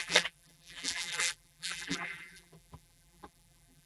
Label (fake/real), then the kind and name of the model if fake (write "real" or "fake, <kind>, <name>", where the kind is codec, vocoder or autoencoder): fake, vocoder, BigVGAN v2